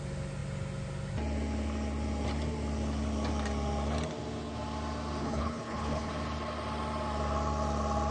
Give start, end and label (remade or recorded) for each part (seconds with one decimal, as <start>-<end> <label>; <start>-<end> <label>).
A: 0.0-5.2 recorded; 5.2-6.1 remade; 6.1-8.1 recorded